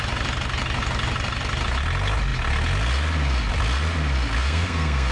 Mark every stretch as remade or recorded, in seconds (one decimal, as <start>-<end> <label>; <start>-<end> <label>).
0.0-4.4 recorded; 4.4-5.1 remade